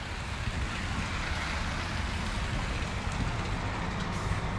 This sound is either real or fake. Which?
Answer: real